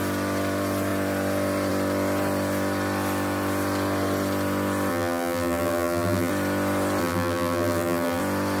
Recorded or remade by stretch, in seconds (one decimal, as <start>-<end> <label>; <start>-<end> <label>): 0.0-4.9 recorded; 4.9-6.3 remade; 6.3-7.0 recorded; 7.0-8.2 remade; 8.2-8.6 recorded